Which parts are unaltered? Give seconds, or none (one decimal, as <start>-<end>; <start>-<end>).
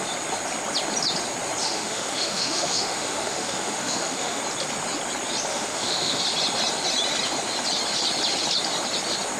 0.0-1.6; 4.4-5.5; 6.2-9.4